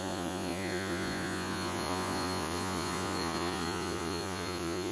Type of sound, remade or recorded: remade